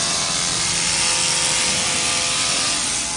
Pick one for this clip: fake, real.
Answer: real